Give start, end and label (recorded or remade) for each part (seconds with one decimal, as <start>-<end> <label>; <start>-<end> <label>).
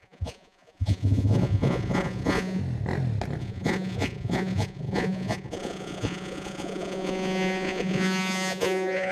0.0-2.6 remade; 2.6-3.4 recorded; 3.4-9.1 remade